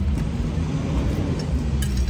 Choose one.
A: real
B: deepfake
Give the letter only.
A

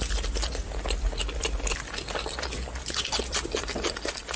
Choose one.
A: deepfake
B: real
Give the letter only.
B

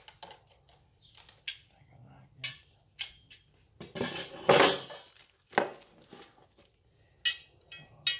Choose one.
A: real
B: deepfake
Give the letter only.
A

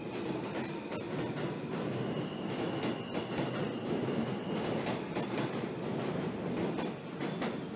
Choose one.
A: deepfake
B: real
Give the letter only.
B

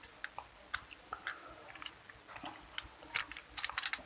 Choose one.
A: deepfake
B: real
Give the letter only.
B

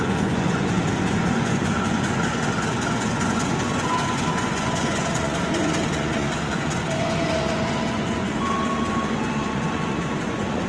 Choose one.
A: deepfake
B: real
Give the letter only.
A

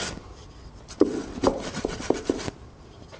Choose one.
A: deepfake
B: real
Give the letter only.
A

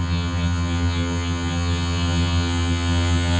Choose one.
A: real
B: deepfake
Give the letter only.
B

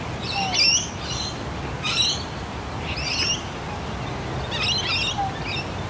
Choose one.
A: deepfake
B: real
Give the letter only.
B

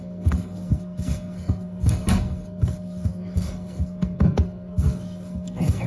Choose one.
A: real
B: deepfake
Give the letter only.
B